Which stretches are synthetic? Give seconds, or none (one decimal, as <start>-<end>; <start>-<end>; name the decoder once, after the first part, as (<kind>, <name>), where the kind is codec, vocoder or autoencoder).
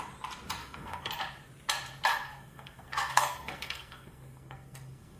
0.6-1.1 (codec, SNAC); 2.1-5.2